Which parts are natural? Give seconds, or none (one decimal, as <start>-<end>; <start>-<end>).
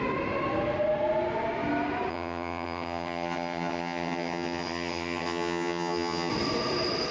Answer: 0.0-2.1; 6.3-7.1